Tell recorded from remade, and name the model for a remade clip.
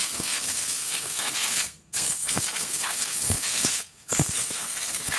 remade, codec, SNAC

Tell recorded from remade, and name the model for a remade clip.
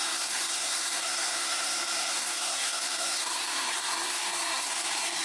remade, codec, SNAC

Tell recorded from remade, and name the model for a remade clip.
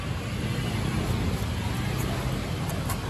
recorded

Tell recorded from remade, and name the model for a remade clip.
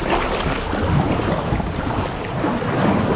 recorded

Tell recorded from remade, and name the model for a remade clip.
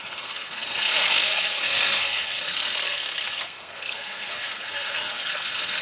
remade, codec, SNAC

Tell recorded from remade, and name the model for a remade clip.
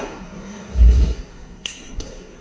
remade, codec, SNAC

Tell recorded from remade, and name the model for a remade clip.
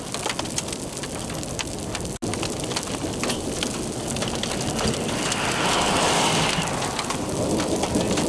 recorded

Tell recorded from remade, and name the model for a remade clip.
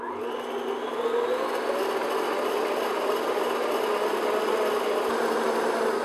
recorded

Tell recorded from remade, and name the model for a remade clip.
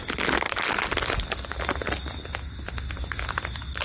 recorded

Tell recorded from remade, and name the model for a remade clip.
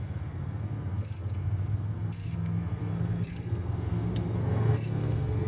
remade, codec, SNAC